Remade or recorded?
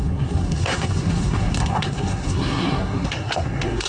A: remade